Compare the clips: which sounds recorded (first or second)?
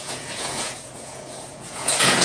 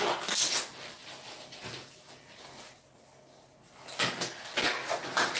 second